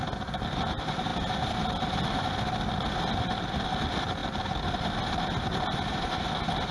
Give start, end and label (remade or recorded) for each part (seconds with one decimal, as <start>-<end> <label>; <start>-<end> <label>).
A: 0.0-6.7 recorded